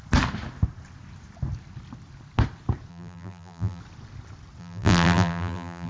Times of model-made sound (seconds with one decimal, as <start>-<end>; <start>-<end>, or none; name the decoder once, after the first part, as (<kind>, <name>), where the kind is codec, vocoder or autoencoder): 2.9-3.8 (vocoder, BigVGAN v2); 4.6-5.9